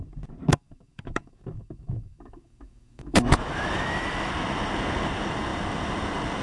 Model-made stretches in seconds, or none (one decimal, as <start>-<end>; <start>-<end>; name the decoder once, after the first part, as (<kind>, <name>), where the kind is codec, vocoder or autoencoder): 0.5-4.3 (autoencoder, DAC-VAE)